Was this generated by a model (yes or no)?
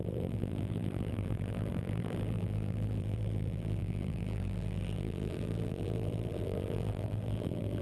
yes